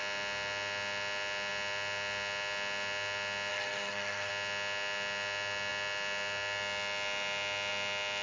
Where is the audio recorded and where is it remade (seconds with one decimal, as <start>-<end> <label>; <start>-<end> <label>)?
0.0-3.5 recorded; 3.5-4.3 remade; 4.3-8.2 recorded

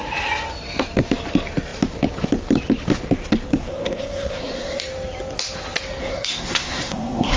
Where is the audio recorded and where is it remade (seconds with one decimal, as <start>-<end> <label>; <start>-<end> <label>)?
0.0-3.6 recorded; 3.6-4.8 remade; 4.8-6.0 recorded; 6.0-7.4 remade

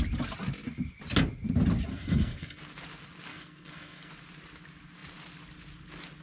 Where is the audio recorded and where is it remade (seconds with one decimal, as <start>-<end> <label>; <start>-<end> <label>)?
0.0-1.9 recorded; 1.9-2.6 remade; 2.6-3.3 recorded; 3.3-4.1 remade; 4.1-6.2 recorded

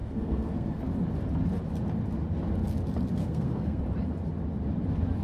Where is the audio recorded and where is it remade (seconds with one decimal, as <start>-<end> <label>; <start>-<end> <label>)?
0.0-0.8 remade; 0.8-3.2 recorded; 3.2-3.8 remade; 3.8-5.2 recorded

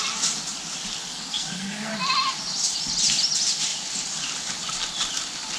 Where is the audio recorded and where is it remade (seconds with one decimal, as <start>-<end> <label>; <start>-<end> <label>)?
0.0-1.0 recorded; 1.0-1.9 remade; 1.9-5.6 recorded